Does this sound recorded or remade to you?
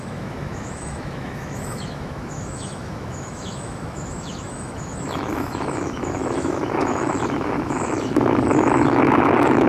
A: remade